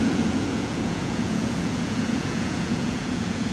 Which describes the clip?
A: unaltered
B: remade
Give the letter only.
B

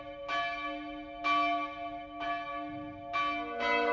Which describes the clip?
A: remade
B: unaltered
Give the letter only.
B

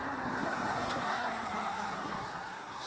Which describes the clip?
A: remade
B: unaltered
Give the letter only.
A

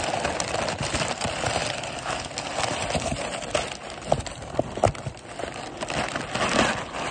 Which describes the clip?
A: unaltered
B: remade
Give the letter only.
A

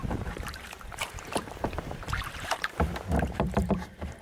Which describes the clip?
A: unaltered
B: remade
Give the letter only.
B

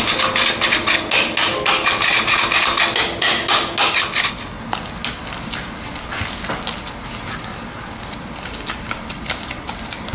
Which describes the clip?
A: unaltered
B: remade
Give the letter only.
A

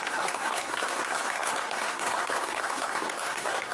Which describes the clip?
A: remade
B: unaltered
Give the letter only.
A